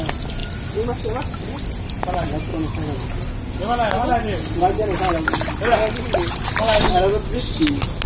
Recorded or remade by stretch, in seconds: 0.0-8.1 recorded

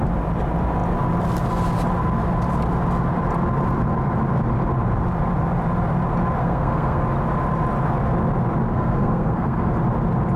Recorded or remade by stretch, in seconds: 0.0-6.4 recorded; 6.4-7.0 remade; 7.0-8.7 recorded; 8.7-9.7 remade; 9.7-10.4 recorded

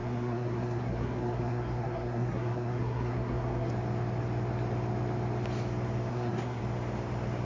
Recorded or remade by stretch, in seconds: 0.0-3.7 remade; 3.7-6.1 recorded; 6.1-6.6 remade; 6.6-7.4 recorded

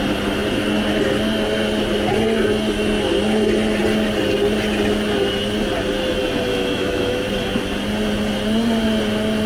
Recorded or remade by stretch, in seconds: 0.0-6.5 recorded; 6.5-7.3 remade; 7.3-9.5 recorded

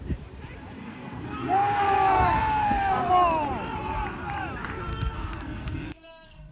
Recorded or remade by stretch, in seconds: 0.0-0.8 recorded; 0.8-3.1 remade; 3.1-4.9 recorded; 4.9-6.5 remade